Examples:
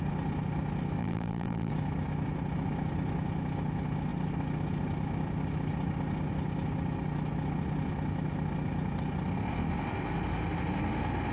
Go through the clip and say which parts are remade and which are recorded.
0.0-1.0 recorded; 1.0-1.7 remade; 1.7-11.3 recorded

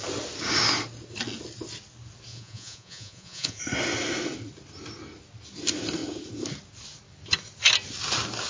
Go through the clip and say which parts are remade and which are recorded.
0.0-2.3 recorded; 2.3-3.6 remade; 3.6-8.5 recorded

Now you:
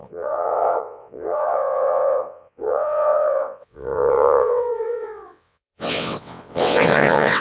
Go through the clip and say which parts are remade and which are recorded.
0.0-7.4 remade

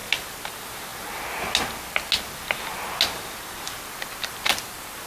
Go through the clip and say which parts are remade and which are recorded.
0.0-0.5 recorded; 0.5-0.9 remade; 0.9-4.0 recorded; 4.0-5.1 remade